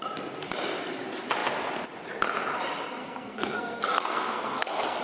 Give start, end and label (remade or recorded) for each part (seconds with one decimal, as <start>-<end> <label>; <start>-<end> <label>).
0.0-3.0 recorded; 3.0-5.0 remade